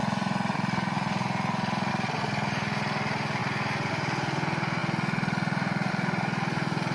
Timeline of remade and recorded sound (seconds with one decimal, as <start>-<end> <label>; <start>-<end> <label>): 0.0-6.9 recorded